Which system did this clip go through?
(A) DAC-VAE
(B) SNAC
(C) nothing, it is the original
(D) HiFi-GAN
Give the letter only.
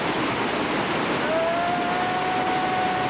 C